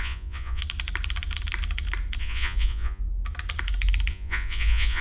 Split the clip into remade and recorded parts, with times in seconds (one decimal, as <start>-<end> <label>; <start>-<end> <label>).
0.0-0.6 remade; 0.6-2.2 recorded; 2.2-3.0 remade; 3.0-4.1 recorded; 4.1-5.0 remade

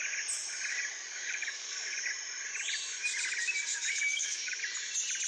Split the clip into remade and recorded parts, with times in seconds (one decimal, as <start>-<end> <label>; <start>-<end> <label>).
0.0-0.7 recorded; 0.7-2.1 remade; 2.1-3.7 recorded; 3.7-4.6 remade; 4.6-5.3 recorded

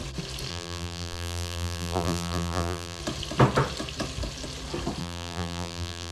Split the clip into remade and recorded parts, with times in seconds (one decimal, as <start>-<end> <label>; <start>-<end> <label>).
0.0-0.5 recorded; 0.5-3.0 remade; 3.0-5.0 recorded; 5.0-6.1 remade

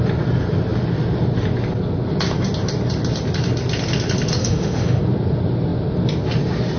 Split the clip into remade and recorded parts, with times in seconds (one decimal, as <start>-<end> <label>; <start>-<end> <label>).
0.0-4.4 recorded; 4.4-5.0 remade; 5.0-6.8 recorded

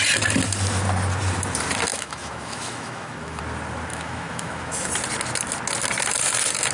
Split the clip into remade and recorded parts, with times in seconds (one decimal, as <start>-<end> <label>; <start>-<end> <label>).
0.0-1.9 recorded; 1.9-3.4 remade; 3.4-3.9 recorded; 3.9-4.9 remade; 4.9-6.7 recorded

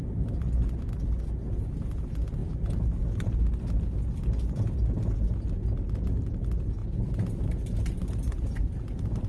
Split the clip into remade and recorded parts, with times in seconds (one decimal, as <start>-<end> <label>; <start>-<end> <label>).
0.0-6.8 recorded; 6.8-9.3 remade